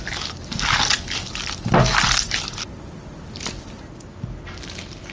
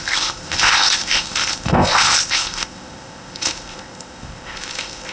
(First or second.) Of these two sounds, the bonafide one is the first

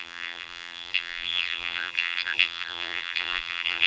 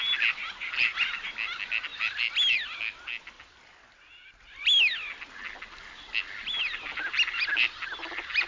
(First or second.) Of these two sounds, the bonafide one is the second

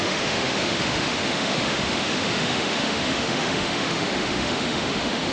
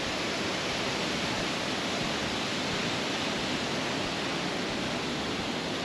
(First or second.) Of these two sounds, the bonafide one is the second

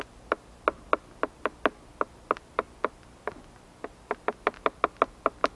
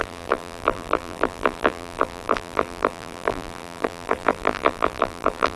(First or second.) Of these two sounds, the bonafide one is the first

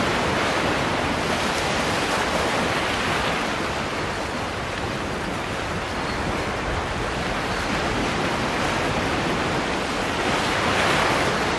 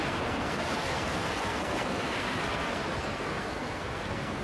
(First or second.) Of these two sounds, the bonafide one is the first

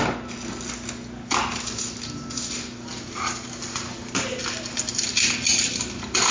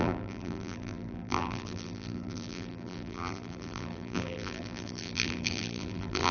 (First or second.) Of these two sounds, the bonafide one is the first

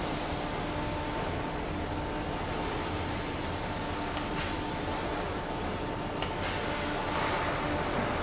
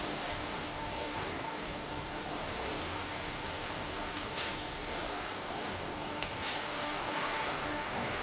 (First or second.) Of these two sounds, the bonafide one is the first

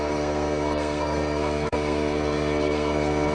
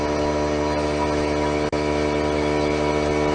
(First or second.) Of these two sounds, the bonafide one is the second